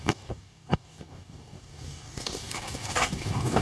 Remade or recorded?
remade